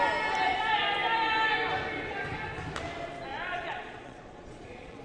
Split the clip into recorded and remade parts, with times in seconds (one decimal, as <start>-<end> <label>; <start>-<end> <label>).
0.0-3.3 recorded; 3.3-5.0 remade

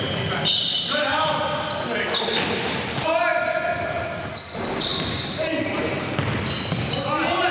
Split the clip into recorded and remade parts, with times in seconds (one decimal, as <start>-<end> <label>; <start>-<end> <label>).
0.0-7.5 recorded

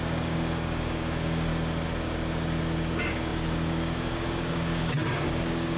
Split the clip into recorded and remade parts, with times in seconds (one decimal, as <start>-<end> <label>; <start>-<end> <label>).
0.0-1.5 remade; 1.5-2.9 recorded; 2.9-5.8 remade

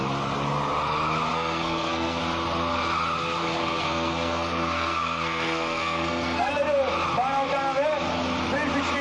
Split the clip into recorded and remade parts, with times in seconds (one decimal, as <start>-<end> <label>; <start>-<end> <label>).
0.0-1.3 recorded; 1.3-2.2 remade; 2.2-3.6 recorded; 3.6-6.5 remade; 6.5-9.0 recorded

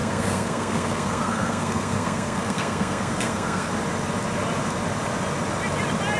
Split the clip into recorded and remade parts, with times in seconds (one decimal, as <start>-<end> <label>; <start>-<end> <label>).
0.0-3.7 remade; 3.7-6.2 recorded

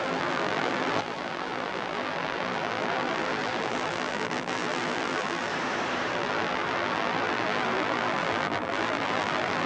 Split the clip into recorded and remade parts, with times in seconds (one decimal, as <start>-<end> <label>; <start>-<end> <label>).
0.0-5.5 remade; 5.5-6.1 recorded; 6.1-9.7 remade

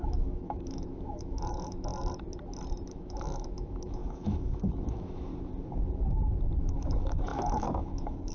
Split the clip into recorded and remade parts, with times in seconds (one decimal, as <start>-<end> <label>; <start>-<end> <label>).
0.0-1.9 remade; 1.9-2.9 recorded; 2.9-5.3 remade; 5.3-6.6 recorded; 6.6-8.3 remade